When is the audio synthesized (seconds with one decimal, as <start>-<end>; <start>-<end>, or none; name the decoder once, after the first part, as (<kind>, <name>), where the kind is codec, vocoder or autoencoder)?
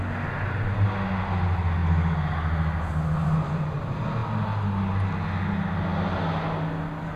none